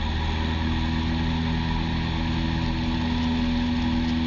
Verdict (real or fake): real